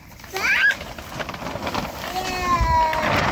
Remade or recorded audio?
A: recorded